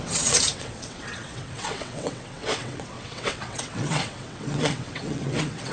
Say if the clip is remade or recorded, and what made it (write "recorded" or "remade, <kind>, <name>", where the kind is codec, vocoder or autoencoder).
remade, vocoder, WaveNeXt